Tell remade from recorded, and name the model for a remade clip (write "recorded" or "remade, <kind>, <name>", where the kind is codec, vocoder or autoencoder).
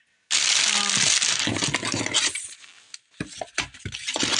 recorded